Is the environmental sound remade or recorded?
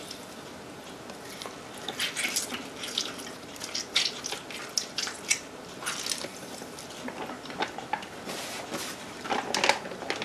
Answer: recorded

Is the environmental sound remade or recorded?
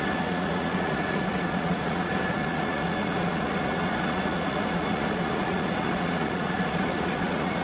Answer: remade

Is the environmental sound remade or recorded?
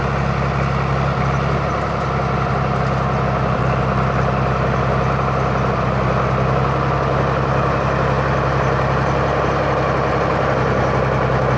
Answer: recorded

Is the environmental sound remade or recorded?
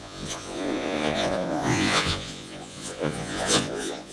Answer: remade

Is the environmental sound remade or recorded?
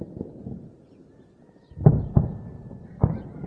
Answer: recorded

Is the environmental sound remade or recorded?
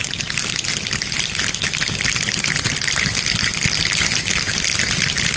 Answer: recorded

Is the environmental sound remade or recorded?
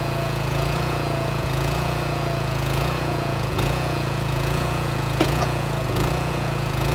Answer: remade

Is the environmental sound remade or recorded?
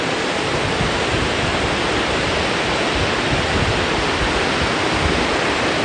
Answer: recorded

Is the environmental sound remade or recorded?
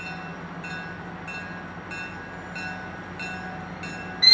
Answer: recorded